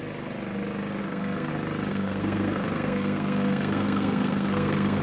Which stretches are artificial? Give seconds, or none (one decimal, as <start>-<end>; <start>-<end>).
1.0-1.5; 1.9-5.0